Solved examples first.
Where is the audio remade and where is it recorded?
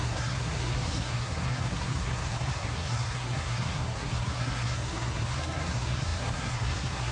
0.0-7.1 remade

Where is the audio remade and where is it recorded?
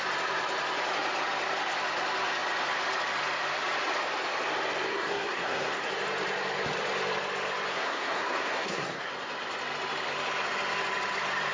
0.0-4.9 recorded; 4.9-5.9 remade; 5.9-7.7 recorded; 7.7-9.1 remade; 9.1-11.5 recorded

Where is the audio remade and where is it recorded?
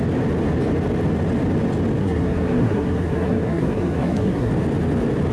0.0-2.0 recorded; 2.0-4.5 remade; 4.5-5.3 recorded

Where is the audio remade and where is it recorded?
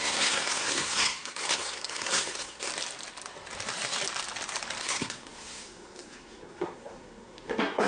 0.0-2.7 remade; 2.7-4.8 recorded; 4.8-7.9 remade